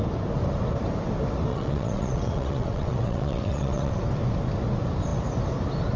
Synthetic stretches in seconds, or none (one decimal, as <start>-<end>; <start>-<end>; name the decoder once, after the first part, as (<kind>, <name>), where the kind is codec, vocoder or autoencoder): 1.5-4.0 (vocoder, WaveNeXt)